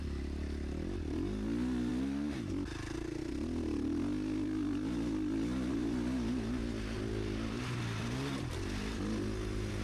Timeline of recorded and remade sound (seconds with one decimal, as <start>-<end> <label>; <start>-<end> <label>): 0.0-9.8 recorded